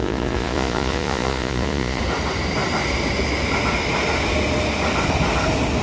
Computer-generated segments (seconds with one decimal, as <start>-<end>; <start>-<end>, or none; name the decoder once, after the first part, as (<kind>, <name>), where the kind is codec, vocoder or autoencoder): 0.0-2.0 (vocoder, Vocos)